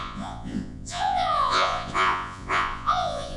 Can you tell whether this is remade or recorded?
remade